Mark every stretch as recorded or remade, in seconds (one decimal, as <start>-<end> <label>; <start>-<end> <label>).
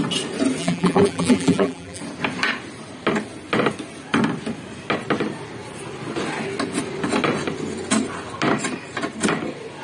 0.0-0.6 recorded; 0.6-2.0 remade; 2.0-9.8 recorded